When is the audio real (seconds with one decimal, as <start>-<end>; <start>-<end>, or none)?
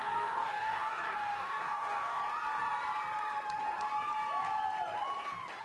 2.2-5.6